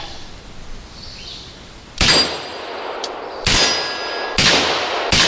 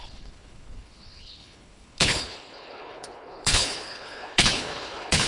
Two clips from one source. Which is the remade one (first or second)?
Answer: second